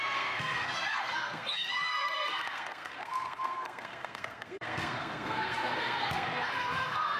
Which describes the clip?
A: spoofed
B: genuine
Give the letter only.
A